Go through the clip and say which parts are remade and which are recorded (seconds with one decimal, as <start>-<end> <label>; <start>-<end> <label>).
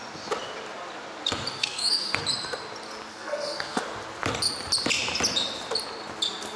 0.0-1.6 recorded; 1.6-2.2 remade; 2.2-3.1 recorded; 3.1-3.8 remade; 3.8-6.6 recorded